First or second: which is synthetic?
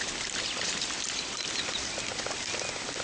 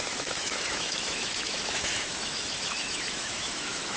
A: second